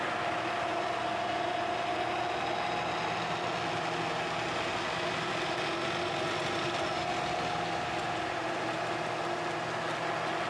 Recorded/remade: recorded